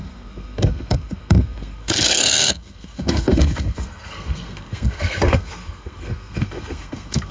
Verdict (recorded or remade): remade